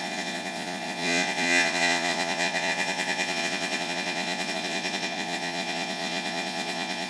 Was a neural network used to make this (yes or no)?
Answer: yes